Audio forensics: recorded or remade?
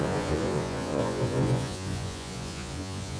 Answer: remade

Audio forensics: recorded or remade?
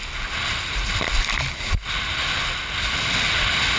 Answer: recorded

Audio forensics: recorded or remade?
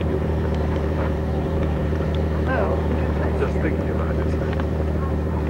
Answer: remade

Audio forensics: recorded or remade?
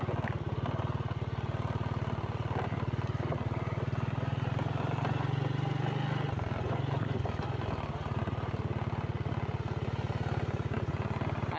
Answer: recorded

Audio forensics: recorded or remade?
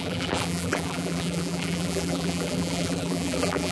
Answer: remade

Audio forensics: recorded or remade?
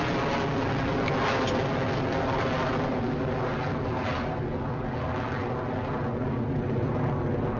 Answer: recorded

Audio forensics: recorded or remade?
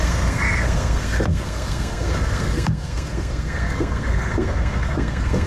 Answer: remade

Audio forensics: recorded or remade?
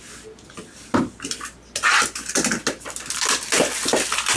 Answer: recorded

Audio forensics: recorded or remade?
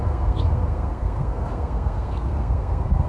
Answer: remade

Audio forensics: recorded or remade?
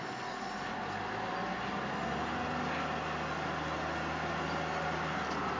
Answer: recorded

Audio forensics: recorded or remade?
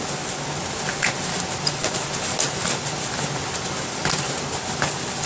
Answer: recorded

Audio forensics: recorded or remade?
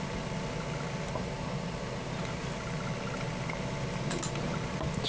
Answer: recorded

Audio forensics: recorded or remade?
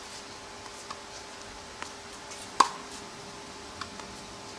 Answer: recorded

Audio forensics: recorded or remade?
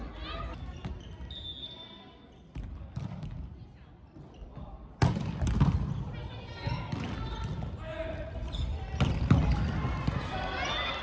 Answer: recorded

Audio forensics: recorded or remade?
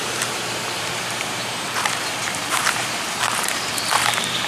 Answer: remade